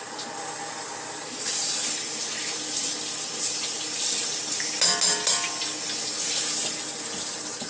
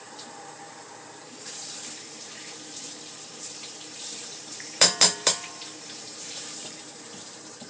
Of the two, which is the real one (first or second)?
first